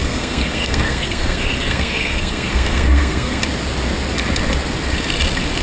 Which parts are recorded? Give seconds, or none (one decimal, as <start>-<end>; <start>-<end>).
3.4-5.6